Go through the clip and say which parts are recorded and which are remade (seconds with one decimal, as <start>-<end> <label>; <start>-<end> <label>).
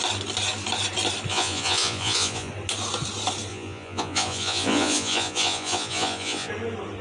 0.0-1.3 recorded; 1.3-2.5 remade; 2.5-3.5 recorded; 3.5-6.5 remade; 6.5-7.0 recorded